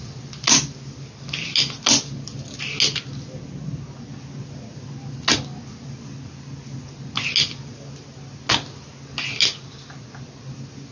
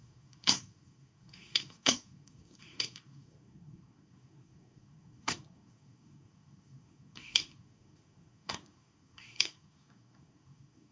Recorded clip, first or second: first